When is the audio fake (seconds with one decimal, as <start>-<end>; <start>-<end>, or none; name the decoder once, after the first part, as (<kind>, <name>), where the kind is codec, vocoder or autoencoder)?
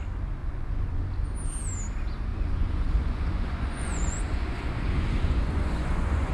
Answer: 0.4-1.0 (vocoder, Vocos); 2.3-6.3